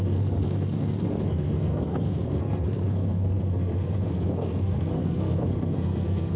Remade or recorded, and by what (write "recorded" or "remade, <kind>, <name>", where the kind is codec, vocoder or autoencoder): remade, codec, SNAC